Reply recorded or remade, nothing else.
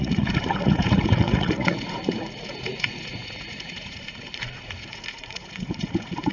remade